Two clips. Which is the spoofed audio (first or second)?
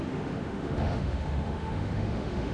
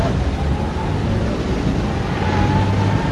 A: first